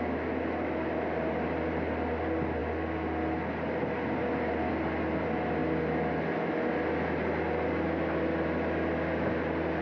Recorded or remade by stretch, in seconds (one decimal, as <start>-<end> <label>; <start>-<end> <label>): 0.0-9.8 recorded